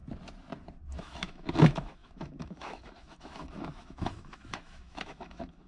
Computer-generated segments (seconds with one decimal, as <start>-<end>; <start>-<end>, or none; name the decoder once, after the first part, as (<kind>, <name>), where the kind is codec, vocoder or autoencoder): 1.0-5.7 (autoencoder, DAC-VAE)